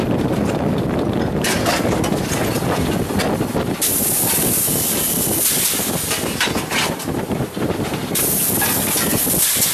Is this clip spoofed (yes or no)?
no